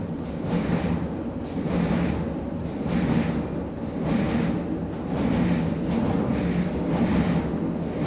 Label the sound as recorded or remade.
recorded